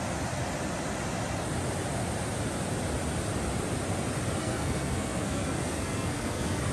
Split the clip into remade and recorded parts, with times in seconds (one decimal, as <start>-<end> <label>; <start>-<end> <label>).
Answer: 0.0-4.4 recorded; 4.4-6.7 remade